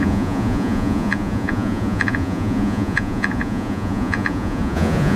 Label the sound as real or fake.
fake